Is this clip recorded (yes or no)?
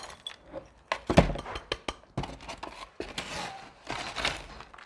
yes